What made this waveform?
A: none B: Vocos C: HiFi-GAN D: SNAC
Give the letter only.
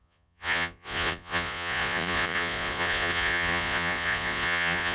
B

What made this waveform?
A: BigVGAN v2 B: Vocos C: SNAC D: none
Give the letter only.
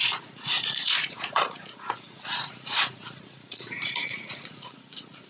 B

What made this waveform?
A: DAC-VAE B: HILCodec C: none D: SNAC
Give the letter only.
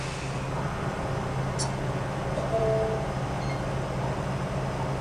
C